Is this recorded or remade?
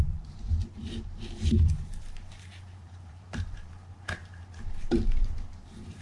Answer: remade